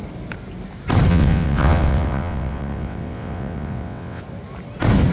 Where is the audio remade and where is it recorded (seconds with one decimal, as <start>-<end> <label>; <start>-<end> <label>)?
0.0-1.1 recorded; 1.1-4.2 remade; 4.2-5.1 recorded

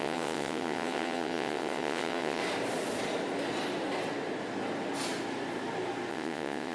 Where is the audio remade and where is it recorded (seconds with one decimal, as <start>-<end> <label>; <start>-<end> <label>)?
0.0-2.4 remade; 2.4-6.1 recorded; 6.1-6.7 remade